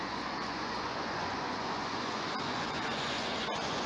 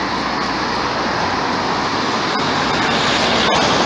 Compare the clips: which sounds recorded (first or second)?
second